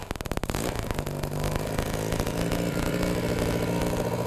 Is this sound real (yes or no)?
yes